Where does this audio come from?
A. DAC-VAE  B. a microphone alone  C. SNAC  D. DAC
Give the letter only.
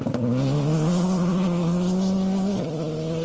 B